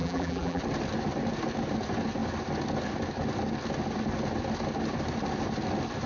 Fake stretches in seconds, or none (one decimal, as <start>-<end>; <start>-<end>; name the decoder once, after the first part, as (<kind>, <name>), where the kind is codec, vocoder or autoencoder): 0.0-0.6 (vocoder, BigVGAN v2)